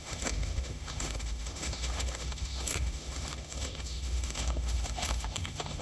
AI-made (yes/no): yes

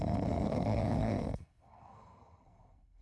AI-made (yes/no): yes